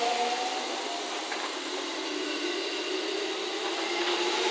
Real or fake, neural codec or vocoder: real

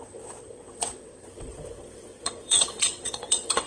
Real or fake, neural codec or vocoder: fake, vocoder, WaveNeXt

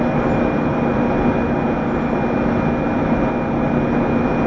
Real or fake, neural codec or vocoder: real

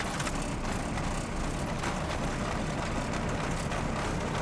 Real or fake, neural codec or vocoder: real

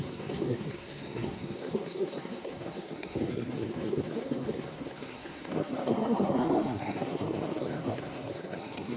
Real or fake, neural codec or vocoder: fake, codec, SNAC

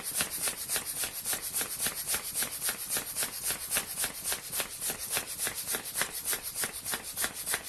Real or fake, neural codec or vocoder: real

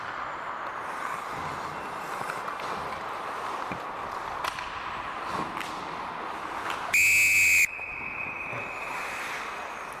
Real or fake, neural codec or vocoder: real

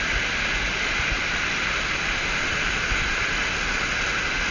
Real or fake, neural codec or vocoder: real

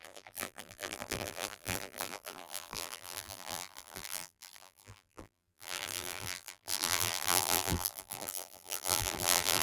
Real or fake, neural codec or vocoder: fake, vocoder, BigVGAN v2